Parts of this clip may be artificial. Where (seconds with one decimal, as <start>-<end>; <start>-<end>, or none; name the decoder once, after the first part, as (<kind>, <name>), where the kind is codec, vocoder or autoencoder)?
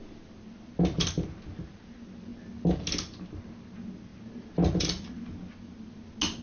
none